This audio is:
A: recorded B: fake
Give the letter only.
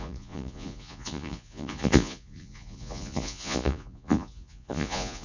B